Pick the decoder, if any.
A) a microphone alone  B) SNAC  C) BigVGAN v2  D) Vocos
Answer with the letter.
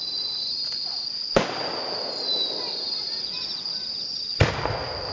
A